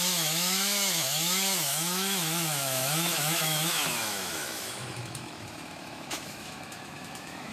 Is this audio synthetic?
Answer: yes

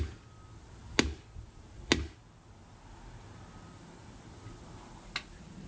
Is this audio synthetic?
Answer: no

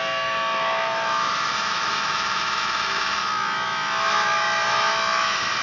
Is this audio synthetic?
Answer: yes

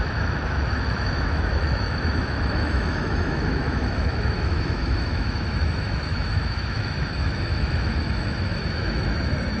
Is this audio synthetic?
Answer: yes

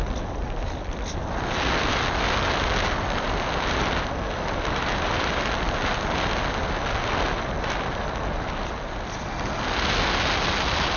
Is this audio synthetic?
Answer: no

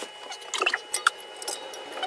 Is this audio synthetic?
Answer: no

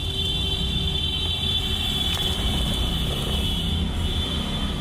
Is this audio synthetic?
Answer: no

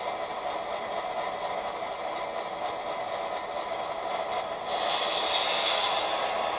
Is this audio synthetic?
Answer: no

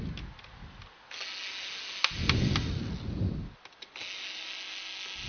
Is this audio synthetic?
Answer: no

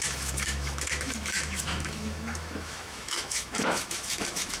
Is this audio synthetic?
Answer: yes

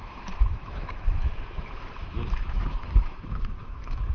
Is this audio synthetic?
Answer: yes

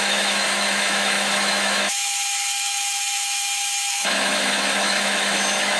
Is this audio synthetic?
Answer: yes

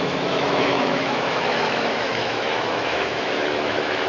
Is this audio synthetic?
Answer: yes